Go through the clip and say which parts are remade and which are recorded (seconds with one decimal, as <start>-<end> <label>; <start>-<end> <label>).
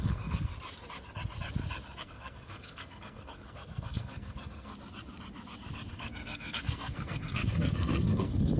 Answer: 0.0-0.5 remade; 0.5-2.0 recorded; 2.0-4.7 remade; 4.7-5.9 recorded; 5.9-8.6 remade